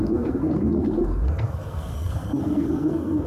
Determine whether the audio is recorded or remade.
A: remade